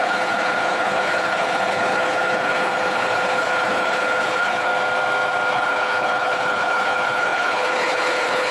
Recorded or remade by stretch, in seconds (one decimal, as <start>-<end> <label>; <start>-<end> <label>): 0.0-4.7 remade; 4.7-5.5 recorded; 5.5-8.5 remade